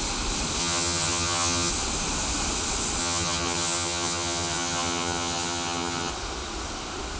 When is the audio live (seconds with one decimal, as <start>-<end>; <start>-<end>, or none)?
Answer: 0.0-0.6; 1.7-3.0; 6.1-7.2